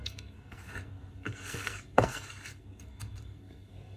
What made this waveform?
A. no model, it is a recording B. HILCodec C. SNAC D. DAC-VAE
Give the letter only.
C